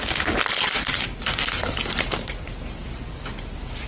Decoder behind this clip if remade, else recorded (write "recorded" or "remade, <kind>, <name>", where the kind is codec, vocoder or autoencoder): recorded